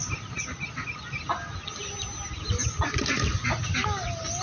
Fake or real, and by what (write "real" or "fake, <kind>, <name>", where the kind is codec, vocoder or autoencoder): real